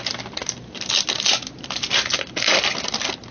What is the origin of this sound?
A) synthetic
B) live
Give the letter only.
B